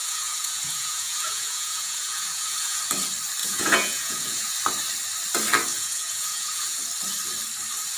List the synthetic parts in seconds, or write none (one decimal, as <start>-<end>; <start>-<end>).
0.0-2.8; 3.4-4.5; 5.7-6.8